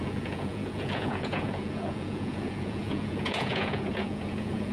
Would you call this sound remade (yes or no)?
yes